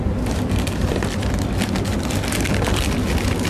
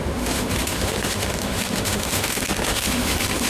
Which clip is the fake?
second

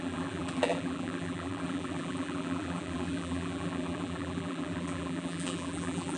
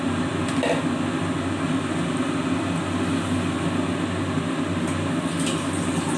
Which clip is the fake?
first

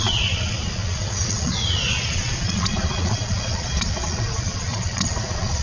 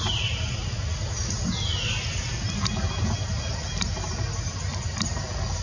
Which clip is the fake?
first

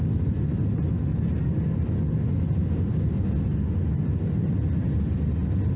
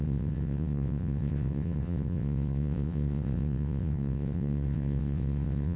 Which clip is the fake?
second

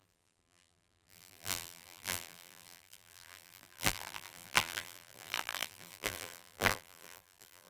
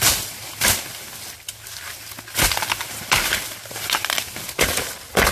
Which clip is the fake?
first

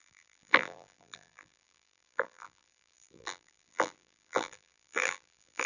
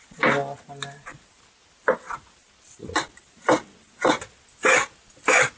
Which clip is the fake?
first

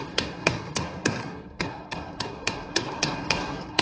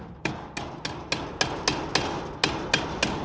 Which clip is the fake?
first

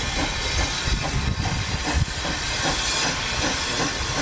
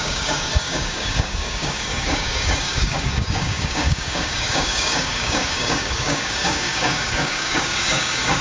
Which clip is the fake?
second